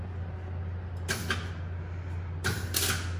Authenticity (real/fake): real